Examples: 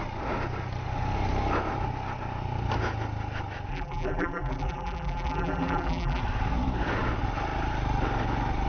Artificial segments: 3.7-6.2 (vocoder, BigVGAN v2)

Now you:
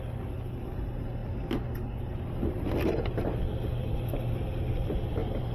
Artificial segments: 3.8-5.0 (vocoder, BigVGAN v2)

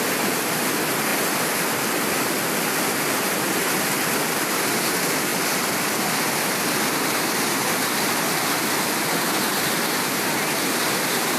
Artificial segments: none

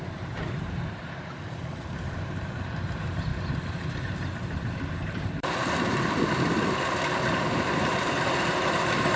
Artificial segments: 0.0-3.3 (vocoder, BigVGAN v2); 4.9-9.2

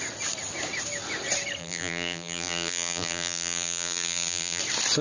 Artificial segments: 1.6-4.6 (vocoder, BigVGAN v2)

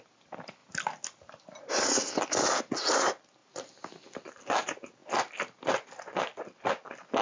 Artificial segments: 3.4-4.6 (vocoder, BigVGAN v2)

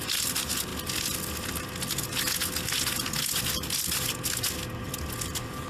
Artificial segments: none